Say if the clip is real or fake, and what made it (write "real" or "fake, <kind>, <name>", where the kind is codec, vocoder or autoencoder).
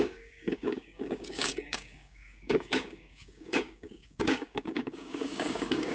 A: fake, codec, DAC